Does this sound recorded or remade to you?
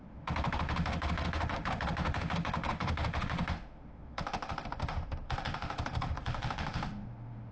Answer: remade